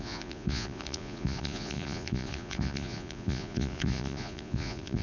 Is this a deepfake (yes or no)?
yes